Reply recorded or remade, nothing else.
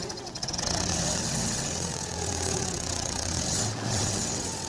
remade